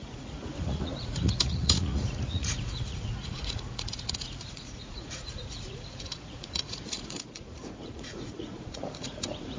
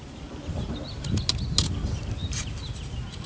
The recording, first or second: second